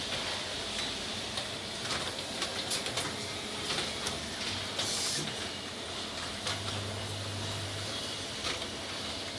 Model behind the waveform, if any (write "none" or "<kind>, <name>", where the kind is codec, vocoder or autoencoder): none